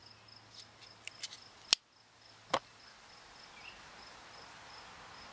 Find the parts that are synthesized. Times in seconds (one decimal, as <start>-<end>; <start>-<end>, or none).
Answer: none